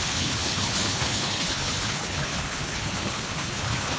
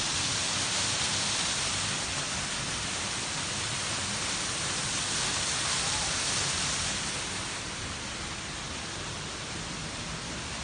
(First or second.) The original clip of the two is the second